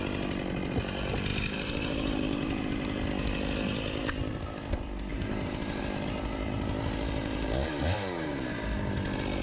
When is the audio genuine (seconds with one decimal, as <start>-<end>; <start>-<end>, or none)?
0.0-1.3; 3.1-5.1; 5.8-9.4